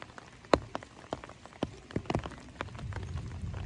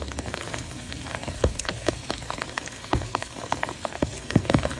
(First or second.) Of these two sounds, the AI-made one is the second